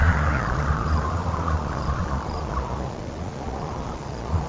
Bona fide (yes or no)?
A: no